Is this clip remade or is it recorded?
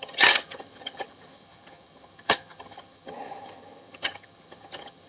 remade